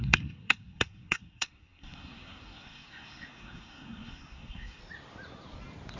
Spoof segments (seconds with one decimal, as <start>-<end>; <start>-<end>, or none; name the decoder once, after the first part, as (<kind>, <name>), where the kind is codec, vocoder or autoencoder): 0.0-4.8 (codec, SNAC)

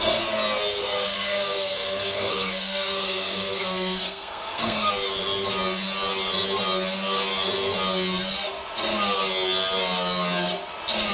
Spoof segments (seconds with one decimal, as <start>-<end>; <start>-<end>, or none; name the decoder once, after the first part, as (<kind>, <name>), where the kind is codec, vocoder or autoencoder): 0.8-4.9 (codec, SNAC)

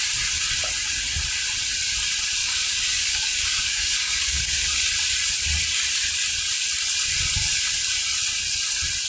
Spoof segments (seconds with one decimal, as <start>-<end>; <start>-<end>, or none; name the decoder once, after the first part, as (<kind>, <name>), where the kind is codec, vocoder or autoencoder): 2.4-4.4 (codec, DAC)